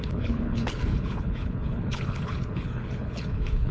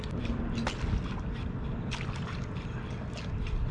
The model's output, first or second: first